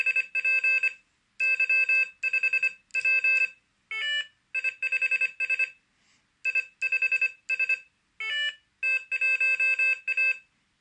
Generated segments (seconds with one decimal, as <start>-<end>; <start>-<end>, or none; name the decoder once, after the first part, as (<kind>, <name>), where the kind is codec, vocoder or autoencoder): none